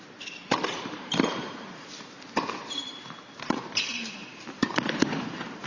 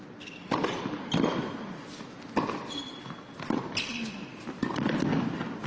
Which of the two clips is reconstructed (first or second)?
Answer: first